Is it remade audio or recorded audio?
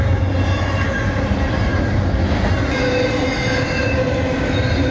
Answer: recorded